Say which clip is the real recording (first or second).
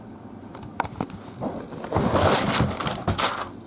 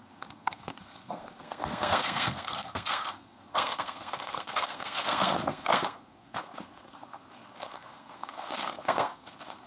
first